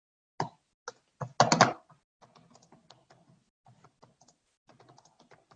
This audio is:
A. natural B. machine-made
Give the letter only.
A